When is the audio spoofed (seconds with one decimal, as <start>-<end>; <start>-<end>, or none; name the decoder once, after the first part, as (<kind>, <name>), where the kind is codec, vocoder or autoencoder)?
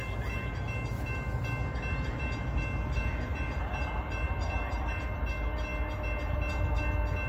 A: 3.3-5.3 (vocoder, BigVGAN v2)